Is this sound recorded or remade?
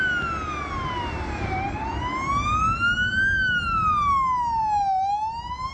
recorded